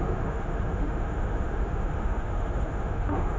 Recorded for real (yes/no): no